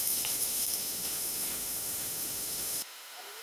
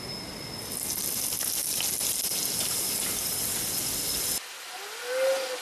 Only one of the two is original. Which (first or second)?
second